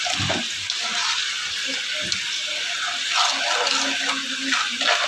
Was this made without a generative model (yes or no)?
yes